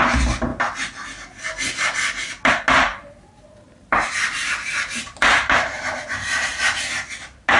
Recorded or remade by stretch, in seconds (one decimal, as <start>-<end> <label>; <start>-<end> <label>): 0.0-2.9 recorded; 2.9-6.8 remade; 6.8-7.6 recorded